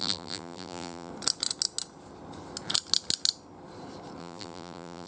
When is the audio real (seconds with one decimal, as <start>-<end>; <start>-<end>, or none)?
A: 1.1-4.2